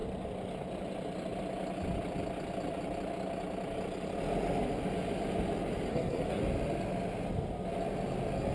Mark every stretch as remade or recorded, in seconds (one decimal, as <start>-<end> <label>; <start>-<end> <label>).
0.0-5.9 recorded; 5.9-6.4 remade; 6.4-8.5 recorded